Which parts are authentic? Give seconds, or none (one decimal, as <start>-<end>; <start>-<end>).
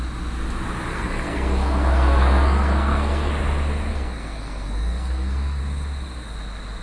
0.0-0.9; 3.3-3.9; 5.6-6.8